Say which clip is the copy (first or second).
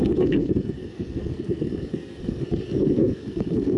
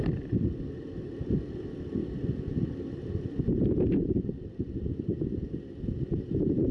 first